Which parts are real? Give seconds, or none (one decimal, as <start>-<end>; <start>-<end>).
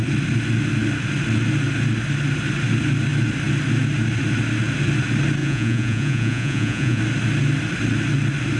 0.0-5.4; 7.0-8.6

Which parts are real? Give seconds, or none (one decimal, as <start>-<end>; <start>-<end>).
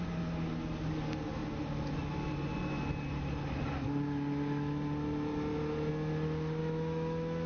0.0-6.6